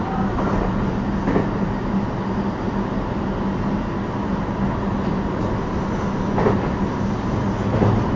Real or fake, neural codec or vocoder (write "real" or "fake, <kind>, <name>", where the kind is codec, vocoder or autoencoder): real